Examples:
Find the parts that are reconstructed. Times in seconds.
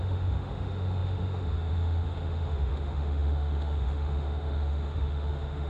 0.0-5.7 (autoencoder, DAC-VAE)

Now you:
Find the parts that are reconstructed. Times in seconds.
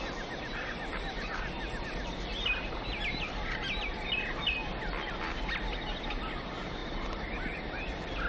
none